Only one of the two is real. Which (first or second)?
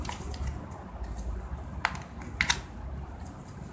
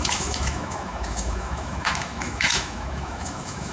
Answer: first